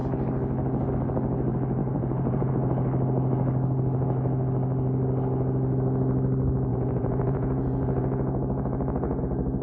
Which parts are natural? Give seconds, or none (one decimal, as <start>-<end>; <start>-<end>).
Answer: 0.0-1.8; 2.5-6.7; 9.2-9.6